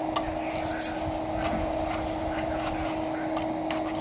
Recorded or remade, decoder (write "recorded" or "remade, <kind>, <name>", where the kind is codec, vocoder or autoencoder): recorded